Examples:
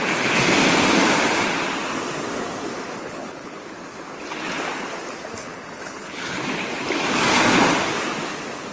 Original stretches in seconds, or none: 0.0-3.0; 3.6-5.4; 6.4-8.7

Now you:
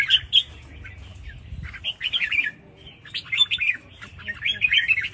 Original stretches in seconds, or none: 0.0-5.1

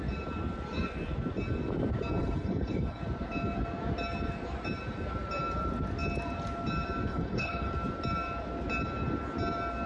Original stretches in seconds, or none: 0.0-2.2; 3.0-7.1; 7.7-9.9